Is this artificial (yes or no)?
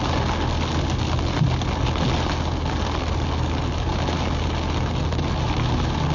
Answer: no